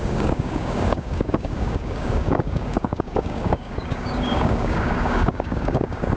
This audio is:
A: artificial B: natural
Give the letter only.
A